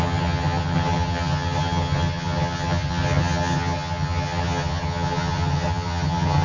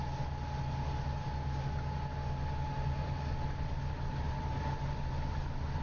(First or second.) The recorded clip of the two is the second